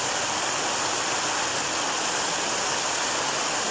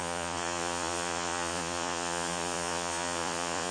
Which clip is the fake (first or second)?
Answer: second